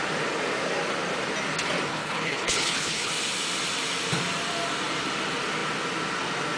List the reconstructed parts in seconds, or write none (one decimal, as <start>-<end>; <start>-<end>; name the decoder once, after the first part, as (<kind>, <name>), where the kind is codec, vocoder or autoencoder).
1.9-3.1 (codec, HILCodec)